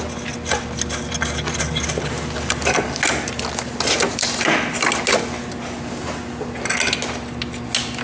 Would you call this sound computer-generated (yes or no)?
no